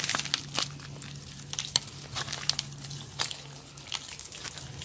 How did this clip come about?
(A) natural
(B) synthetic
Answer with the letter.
A